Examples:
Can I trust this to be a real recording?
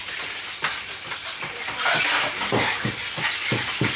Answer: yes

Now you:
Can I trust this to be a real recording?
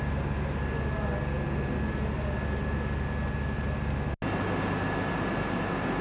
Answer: yes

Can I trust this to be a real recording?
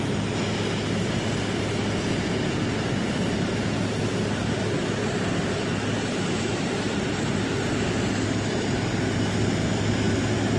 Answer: yes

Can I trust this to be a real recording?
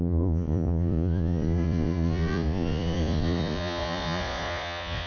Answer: no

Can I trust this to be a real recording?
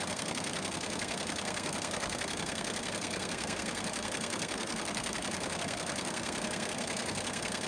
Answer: no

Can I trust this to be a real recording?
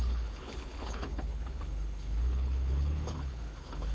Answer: no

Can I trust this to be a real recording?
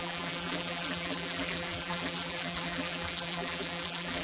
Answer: no